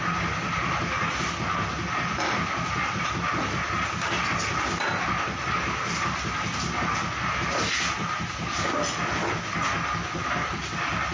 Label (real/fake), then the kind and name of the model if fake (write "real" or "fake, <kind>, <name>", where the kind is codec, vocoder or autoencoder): real